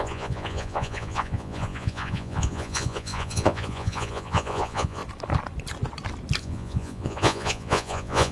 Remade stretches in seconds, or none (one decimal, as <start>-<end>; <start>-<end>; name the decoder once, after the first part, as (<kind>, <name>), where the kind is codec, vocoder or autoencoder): 0.0-5.0 (vocoder, Vocos); 6.4-8.3